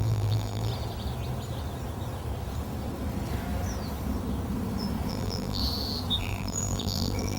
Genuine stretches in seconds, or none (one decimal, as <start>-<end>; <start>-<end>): 0.7-5.1; 5.6-6.2